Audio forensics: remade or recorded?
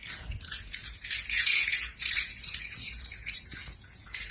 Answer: remade